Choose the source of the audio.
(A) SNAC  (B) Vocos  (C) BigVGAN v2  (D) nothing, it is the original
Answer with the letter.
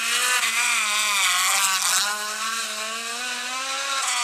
D